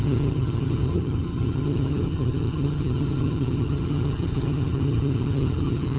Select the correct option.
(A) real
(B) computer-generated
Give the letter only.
B